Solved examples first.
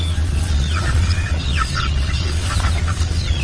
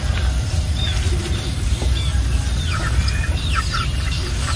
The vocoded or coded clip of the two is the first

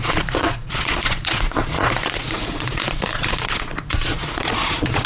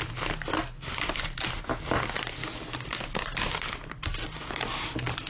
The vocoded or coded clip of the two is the first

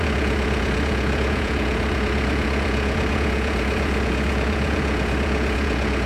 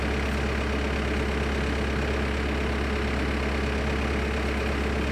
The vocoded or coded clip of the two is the first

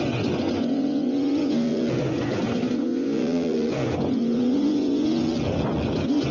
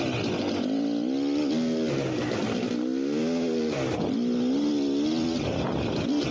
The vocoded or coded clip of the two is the first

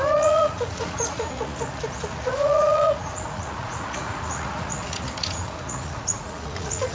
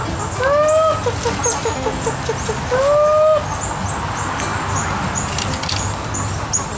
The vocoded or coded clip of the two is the first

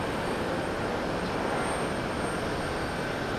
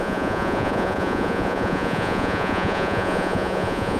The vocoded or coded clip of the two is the second